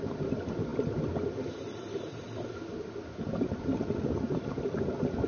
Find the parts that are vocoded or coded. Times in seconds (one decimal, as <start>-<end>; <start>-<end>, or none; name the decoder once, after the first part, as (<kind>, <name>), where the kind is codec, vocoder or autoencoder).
none